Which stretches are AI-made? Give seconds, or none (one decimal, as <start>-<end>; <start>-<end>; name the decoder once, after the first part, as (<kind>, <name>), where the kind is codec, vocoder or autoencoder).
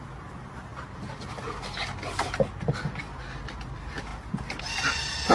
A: none